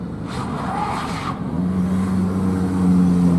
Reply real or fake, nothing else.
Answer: real